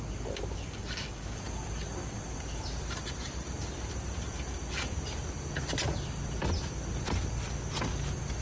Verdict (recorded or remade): recorded